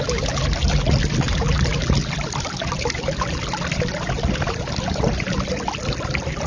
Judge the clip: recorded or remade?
recorded